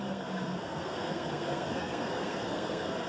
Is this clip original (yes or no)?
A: no